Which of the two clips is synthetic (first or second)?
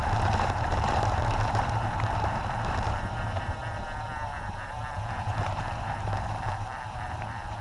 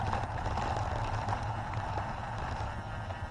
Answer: first